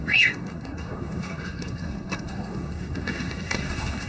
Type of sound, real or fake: fake